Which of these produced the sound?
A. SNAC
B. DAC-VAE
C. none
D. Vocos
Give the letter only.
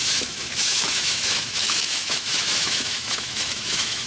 B